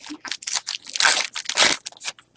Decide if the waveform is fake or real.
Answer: real